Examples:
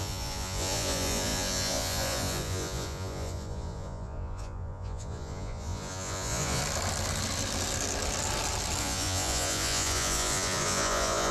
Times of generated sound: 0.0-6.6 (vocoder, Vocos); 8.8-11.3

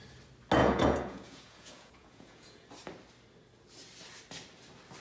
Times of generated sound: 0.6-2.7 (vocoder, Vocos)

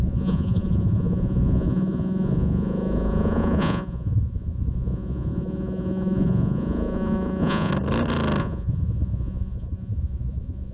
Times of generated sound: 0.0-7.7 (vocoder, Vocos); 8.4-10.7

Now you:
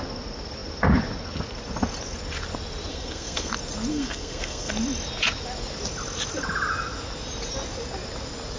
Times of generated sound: 2.9-3.5 (codec, SNAC); 3.9-4.7